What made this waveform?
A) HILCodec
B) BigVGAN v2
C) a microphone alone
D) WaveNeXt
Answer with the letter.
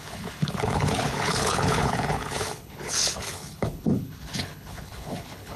A